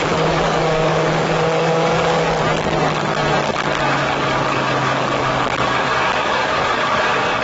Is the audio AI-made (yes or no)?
yes